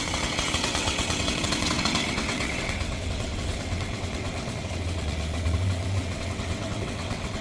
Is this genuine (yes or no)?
no